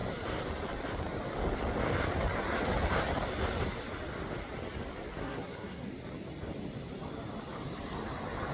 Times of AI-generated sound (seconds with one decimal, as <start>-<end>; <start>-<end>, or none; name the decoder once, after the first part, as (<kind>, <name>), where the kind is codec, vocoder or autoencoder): 5.2-5.9 (codec, SNAC)

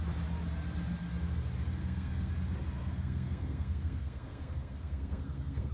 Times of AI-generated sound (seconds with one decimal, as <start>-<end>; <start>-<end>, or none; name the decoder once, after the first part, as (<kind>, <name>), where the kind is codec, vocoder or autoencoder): 1.8-2.3 (codec, SNAC); 2.8-5.7